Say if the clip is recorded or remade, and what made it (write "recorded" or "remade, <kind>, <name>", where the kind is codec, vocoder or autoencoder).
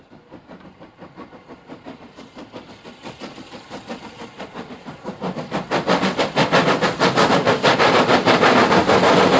recorded